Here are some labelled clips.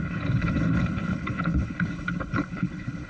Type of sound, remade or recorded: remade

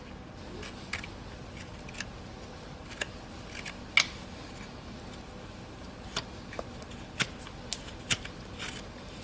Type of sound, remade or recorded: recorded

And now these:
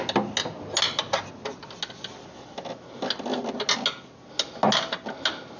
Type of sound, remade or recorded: recorded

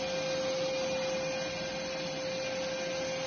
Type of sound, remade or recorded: recorded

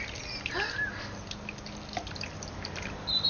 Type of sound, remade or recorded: recorded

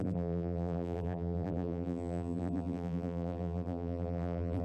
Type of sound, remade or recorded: remade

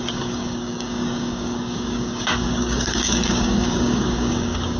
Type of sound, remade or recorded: remade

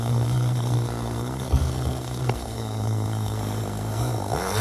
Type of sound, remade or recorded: remade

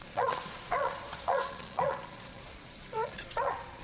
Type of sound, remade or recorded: remade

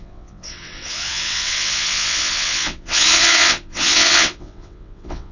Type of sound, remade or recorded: remade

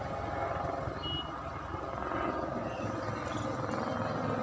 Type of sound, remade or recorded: recorded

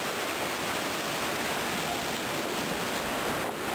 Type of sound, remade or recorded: recorded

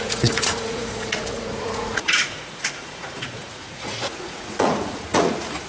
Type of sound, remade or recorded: remade